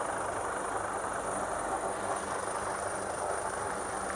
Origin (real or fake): real